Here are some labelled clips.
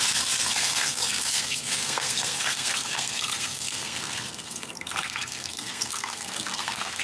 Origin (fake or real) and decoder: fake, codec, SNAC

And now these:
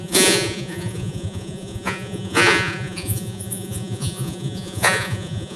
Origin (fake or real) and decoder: fake, vocoder, Vocos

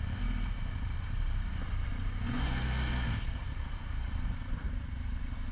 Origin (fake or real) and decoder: real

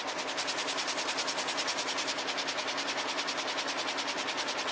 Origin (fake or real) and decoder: real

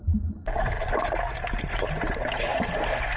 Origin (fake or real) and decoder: real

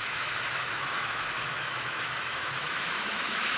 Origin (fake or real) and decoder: fake, autoencoder, DAC-VAE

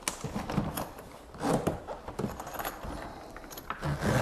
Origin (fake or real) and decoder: real